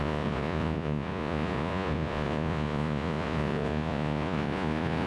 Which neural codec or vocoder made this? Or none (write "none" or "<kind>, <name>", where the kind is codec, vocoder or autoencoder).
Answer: vocoder, Vocos